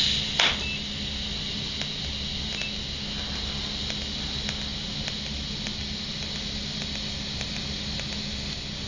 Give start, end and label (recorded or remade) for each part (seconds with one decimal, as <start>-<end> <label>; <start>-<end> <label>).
0.0-8.9 recorded